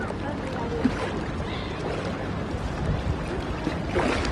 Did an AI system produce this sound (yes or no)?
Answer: no